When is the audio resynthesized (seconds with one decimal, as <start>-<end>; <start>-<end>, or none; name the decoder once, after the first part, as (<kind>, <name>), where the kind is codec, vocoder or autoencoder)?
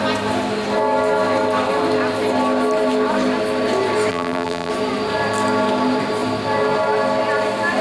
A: 4.1-4.7 (vocoder, BigVGAN v2)